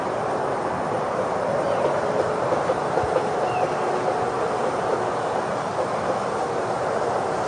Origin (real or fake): fake